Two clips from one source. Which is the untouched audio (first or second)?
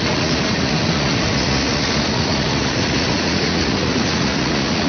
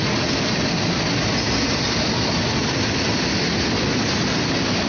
second